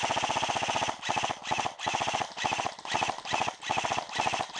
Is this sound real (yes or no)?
yes